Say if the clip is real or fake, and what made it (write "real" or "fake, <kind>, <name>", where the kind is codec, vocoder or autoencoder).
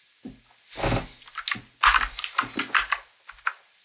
real